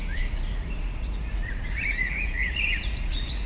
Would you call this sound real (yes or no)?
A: no